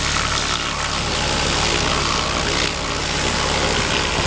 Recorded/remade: recorded